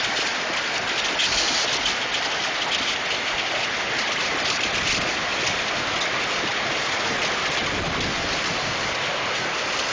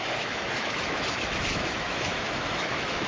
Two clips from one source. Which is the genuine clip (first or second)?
first